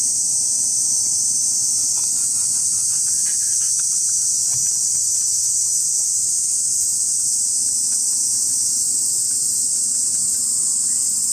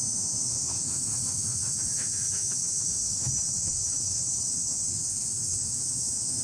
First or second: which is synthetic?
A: second